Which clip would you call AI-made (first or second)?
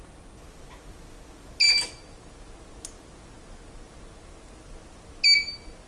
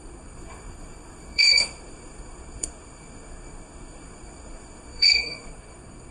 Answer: second